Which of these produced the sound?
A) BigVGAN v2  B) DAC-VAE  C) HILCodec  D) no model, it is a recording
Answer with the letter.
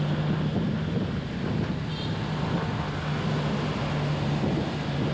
D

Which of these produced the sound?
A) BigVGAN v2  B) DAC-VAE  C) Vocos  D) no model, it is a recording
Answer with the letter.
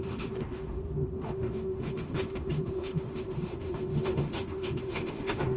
B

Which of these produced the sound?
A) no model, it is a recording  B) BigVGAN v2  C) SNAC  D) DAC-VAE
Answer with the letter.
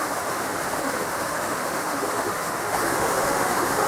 D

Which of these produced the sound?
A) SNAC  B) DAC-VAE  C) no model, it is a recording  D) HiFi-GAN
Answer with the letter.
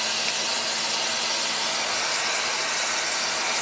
C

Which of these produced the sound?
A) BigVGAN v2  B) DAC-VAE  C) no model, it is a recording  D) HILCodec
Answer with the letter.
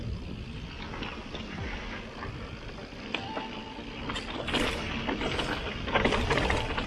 C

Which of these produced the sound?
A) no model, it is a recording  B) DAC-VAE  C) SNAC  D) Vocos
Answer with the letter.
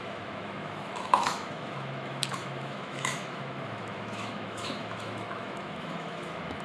B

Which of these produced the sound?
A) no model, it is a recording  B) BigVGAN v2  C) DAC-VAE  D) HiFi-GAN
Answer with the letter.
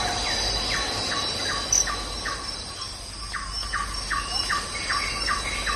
A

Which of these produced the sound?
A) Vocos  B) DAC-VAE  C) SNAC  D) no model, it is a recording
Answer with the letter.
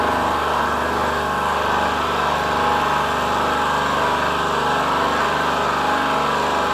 D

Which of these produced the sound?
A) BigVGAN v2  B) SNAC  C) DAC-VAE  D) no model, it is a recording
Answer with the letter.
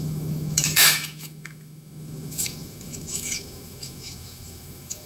C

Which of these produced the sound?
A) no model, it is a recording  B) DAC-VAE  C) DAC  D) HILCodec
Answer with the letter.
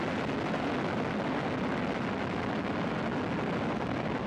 A